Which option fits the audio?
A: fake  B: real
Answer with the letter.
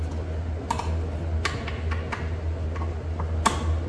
B